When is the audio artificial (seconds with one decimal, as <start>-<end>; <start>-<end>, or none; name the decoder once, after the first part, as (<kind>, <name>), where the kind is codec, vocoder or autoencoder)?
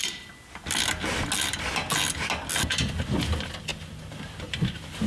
none